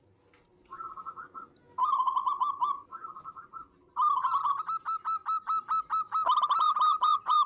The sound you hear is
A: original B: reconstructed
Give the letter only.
A